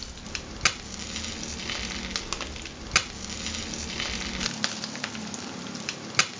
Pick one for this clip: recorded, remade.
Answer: recorded